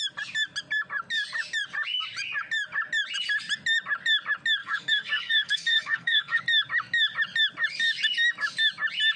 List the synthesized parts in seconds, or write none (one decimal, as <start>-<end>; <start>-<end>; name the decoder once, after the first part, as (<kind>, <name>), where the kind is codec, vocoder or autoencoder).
4.6-6.4 (codec, SNAC)